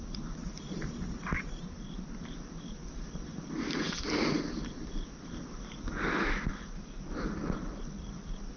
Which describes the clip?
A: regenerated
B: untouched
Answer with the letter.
B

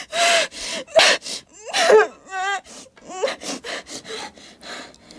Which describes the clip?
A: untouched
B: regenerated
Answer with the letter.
A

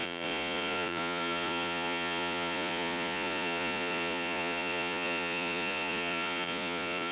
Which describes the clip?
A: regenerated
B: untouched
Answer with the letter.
A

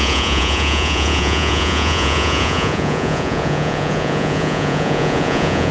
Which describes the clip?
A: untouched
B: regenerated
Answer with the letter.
B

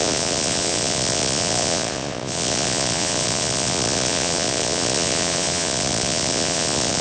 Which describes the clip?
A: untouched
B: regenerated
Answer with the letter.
B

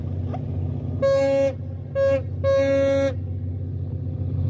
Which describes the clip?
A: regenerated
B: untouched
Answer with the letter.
B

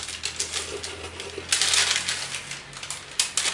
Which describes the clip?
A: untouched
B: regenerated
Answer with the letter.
A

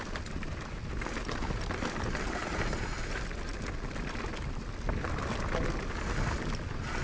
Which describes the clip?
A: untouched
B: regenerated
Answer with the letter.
A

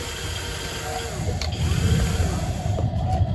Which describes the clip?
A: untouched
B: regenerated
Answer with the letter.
A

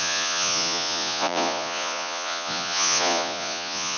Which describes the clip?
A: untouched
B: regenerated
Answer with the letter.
B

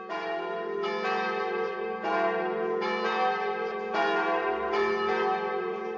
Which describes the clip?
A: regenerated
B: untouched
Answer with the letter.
B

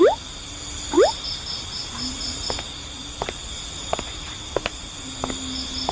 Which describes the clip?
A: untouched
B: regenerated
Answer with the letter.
A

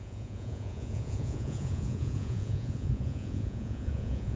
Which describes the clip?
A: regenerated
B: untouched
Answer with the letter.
A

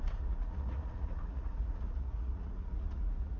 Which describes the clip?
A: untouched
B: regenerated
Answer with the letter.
B